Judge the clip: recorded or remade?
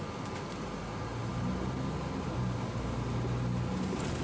recorded